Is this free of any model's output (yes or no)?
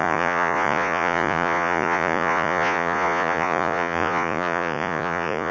no